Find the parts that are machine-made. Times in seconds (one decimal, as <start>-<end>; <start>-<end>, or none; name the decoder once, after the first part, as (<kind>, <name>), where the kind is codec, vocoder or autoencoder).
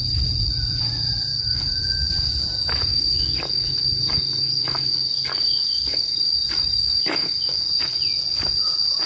1.3-2.1 (codec, DAC); 2.9-7.7